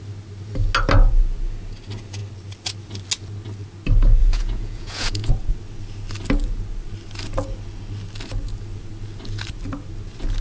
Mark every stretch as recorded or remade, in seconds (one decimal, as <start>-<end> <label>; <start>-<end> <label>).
0.0-4.2 recorded; 4.2-5.3 remade; 5.3-10.4 recorded